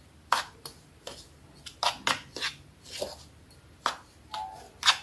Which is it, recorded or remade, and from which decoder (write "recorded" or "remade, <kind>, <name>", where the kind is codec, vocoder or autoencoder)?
recorded